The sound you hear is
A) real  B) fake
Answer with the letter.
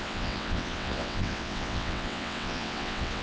B